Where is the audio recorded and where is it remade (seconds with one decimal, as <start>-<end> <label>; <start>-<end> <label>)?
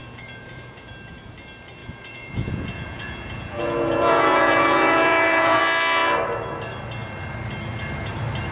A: 0.0-0.9 remade; 0.9-1.8 recorded; 1.8-5.6 remade; 5.6-8.5 recorded